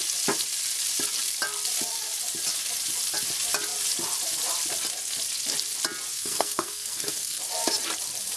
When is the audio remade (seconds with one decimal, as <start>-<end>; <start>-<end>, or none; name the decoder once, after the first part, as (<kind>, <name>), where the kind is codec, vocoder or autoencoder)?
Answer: 6.1-7.4 (codec, SNAC)

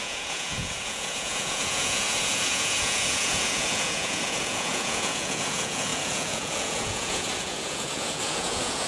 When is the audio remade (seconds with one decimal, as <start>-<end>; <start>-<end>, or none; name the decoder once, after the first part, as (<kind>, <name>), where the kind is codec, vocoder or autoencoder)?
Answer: 0.0-8.9 (vocoder, Vocos)

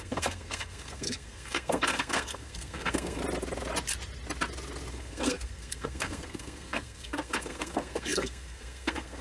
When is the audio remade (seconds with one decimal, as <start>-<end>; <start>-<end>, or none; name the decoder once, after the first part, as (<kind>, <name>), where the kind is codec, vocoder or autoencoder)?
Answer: 0.0-3.2 (codec, SNAC); 4.9-9.2

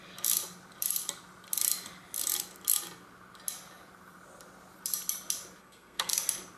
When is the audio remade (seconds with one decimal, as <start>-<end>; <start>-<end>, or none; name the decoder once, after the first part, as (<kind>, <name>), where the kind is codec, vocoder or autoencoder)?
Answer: 5.6-6.1 (codec, SNAC)

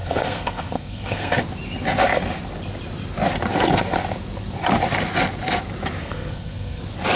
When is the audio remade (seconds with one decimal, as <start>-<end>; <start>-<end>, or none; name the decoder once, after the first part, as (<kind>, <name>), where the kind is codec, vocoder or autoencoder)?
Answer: 0.0-1.4 (codec, SNAC); 6.0-6.8